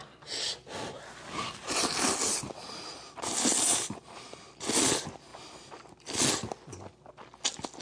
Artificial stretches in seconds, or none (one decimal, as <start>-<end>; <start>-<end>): none